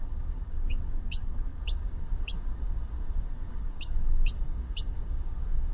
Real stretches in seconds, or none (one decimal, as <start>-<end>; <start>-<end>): none

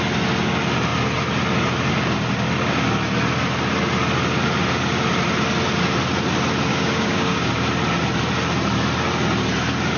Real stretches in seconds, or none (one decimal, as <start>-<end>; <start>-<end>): 0.0-6.7; 7.5-10.0

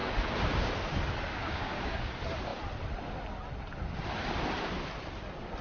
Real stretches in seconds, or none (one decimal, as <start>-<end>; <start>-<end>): 0.7-1.3; 2.1-5.6

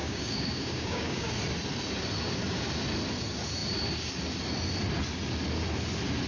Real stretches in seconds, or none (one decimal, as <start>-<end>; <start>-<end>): 1.3-6.3

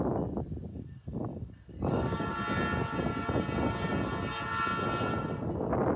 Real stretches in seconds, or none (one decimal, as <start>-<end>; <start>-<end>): 0.0-0.7; 2.3-6.0

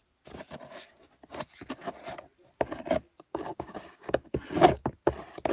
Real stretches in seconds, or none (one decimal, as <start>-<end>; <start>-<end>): 0.0-3.3; 4.3-5.5

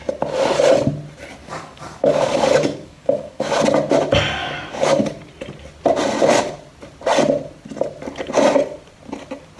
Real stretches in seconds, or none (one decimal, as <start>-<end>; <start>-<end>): 0.0-1.4; 3.5-4.4; 5.0-9.6